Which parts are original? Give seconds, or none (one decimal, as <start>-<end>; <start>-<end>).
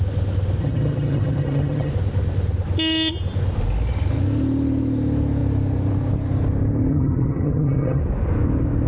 0.0-0.6; 1.9-6.9; 8.0-8.9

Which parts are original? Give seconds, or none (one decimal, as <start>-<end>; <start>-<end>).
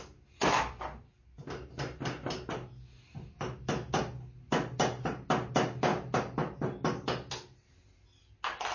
0.0-8.7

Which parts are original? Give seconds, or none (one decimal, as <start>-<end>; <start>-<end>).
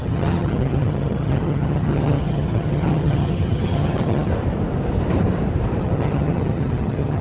4.3-5.8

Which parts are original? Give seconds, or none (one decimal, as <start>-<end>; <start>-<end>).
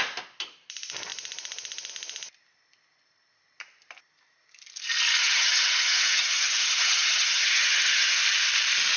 0.0-5.2; 8.2-9.0